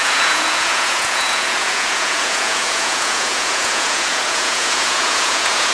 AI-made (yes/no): yes